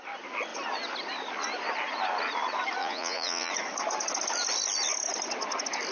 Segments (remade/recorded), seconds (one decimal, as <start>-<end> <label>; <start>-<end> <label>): 0.0-2.8 recorded; 2.8-3.5 remade; 3.5-5.9 recorded